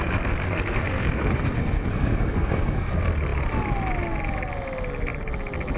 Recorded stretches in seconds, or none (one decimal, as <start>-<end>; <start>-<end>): 0.0-0.4; 2.9-5.8